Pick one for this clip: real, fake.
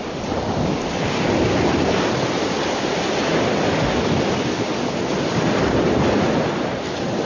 real